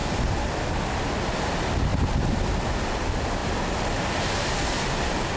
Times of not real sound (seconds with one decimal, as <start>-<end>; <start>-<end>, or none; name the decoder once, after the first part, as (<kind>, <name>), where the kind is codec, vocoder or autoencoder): 0.0-0.7 (vocoder, BigVGAN v2); 1.9-2.9; 3.4-4.9